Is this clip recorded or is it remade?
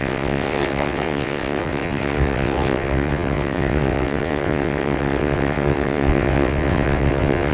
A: remade